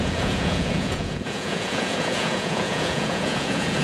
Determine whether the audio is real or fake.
fake